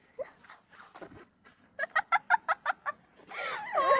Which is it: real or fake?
real